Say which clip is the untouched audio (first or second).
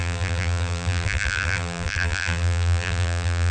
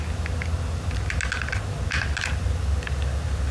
second